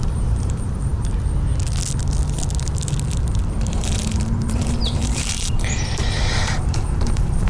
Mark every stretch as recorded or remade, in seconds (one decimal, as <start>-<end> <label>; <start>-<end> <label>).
0.0-0.9 remade; 0.9-3.7 recorded; 3.7-7.5 remade